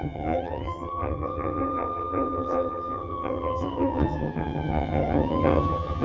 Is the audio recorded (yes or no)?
no